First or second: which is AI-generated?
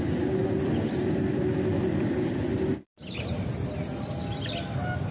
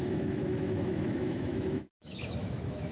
second